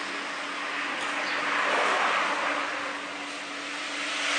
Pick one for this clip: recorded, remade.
recorded